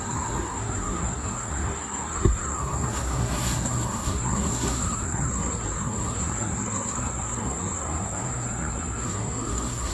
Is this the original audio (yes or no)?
no